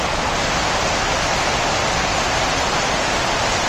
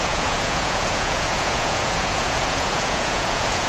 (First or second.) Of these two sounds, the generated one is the second